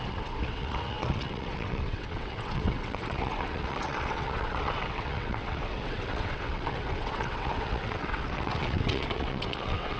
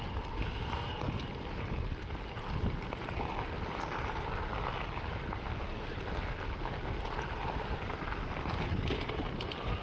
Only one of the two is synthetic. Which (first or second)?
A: first